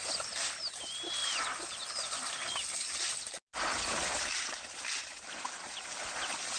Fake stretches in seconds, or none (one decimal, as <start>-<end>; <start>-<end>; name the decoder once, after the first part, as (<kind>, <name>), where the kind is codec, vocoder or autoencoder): none